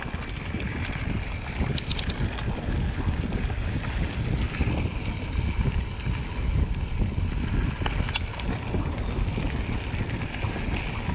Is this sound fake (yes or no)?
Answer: no